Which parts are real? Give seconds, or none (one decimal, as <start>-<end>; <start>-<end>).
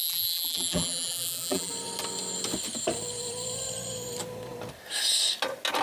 1.7-5.8